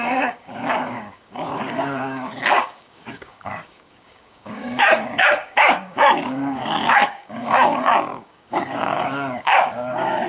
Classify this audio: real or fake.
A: fake